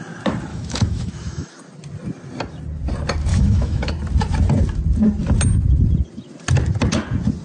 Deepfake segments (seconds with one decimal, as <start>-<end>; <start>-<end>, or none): 0.5-1.5; 3.3-3.9